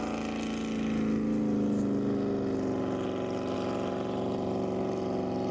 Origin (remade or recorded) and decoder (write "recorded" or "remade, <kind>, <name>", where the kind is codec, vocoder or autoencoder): recorded